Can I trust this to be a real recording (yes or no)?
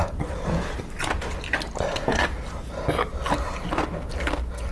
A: yes